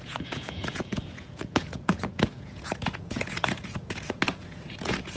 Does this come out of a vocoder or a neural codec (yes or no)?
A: yes